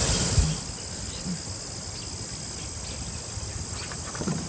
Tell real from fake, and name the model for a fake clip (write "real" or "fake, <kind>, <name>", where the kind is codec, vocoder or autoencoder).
real